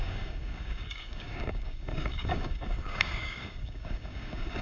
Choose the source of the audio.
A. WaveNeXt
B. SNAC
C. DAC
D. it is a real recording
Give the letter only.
C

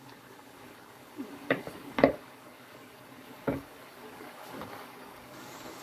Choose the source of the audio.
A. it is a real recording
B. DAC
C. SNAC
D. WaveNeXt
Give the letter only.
B